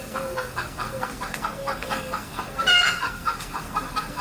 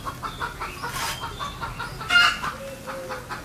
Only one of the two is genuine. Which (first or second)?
second